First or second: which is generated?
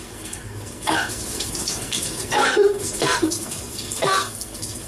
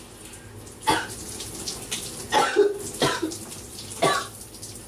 first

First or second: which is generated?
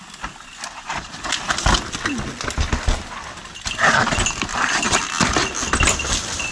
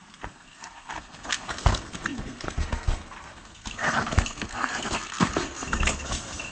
second